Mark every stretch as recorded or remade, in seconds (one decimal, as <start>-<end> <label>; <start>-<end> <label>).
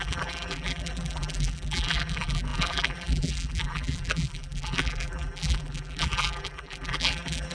0.0-7.5 remade